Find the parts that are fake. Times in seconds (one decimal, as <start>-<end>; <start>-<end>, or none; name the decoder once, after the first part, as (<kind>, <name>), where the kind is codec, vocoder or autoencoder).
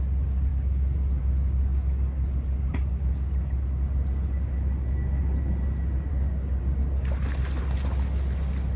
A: 6.1-6.6 (codec, DAC)